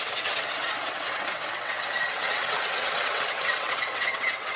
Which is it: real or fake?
fake